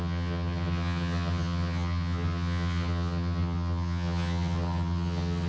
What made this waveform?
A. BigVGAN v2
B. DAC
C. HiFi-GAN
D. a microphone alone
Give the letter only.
C